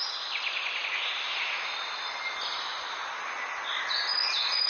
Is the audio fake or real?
real